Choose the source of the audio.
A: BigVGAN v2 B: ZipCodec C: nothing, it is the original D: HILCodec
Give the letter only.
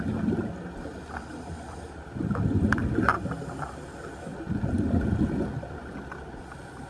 C